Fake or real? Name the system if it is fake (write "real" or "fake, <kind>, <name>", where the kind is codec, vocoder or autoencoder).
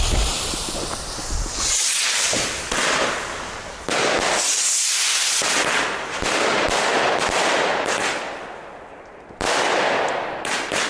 real